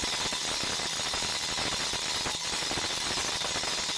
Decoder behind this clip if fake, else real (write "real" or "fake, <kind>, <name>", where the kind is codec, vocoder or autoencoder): real